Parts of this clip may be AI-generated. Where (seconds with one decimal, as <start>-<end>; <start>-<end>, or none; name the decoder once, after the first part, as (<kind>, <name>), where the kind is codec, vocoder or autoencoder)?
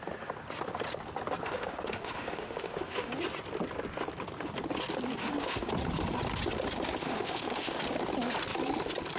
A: 1.4-3.1 (autoencoder, DAC-VAE); 5.2-5.7; 7.0-7.8